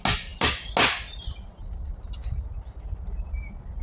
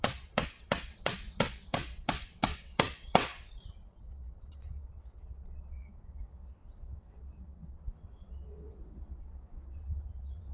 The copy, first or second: second